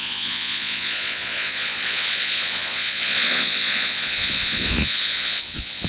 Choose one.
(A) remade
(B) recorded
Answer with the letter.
A